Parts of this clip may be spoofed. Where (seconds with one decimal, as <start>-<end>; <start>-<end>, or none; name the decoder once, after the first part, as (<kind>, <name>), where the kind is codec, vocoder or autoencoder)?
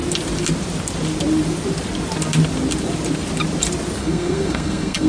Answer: 4.0-5.1 (codec, SNAC)